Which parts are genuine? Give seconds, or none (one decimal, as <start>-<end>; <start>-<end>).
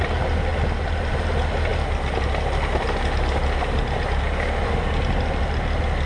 0.0-6.1